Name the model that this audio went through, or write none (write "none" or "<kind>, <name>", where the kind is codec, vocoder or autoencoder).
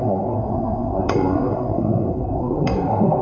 codec, SNAC